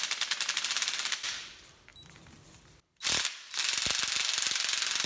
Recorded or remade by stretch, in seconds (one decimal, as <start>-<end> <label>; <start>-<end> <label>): 0.0-1.9 remade; 1.9-5.1 recorded